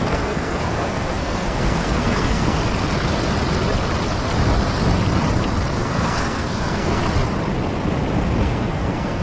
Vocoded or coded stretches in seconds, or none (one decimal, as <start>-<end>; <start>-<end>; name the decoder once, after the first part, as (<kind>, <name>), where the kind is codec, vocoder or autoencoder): 0.0-2.6 (codec, SNAC); 5.7-7.0; 8.4-9.2